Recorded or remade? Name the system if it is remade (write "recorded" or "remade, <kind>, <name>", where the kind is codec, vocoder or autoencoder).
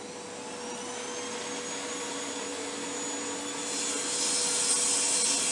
recorded